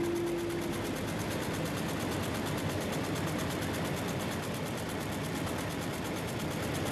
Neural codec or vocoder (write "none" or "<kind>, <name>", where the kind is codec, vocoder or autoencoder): none